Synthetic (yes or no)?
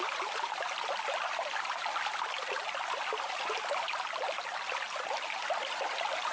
no